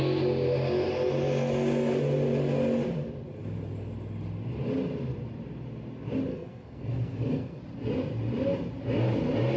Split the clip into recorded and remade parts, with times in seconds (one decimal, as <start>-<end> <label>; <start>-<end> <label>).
0.0-6.3 recorded; 6.3-7.6 remade; 7.6-9.6 recorded